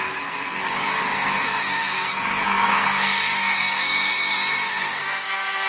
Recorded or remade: remade